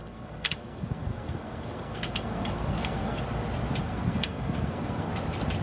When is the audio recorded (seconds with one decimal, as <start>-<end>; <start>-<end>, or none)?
3.2-3.8; 5.1-5.6